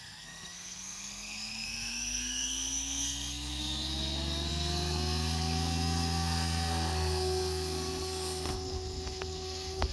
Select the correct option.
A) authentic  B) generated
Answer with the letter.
B